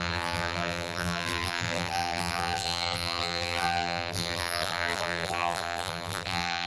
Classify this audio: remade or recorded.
remade